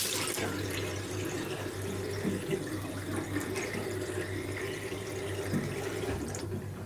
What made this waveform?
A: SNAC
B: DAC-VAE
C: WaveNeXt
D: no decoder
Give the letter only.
D